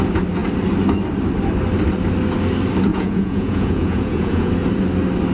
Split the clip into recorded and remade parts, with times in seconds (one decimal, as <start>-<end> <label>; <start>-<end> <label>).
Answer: 0.0-2.9 recorded; 2.9-4.5 remade; 4.5-5.3 recorded